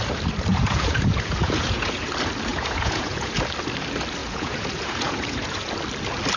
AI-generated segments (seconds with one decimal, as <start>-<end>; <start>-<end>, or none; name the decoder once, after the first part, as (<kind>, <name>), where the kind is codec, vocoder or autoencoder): 0.5-2.1 (vocoder, Vocos); 2.5-3.3; 4.2-5.7